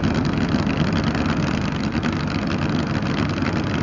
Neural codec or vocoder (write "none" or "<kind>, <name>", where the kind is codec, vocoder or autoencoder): none